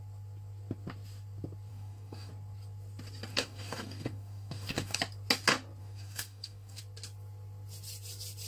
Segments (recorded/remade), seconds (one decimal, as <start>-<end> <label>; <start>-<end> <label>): 0.0-1.7 recorded; 1.7-2.3 remade; 2.3-3.3 recorded; 3.3-5.0 remade; 5.0-5.8 recorded; 5.8-6.8 remade; 6.8-8.5 recorded